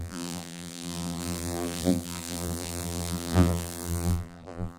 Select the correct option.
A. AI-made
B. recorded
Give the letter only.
A